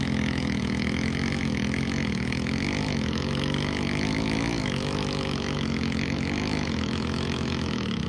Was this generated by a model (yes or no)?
yes